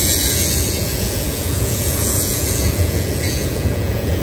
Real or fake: fake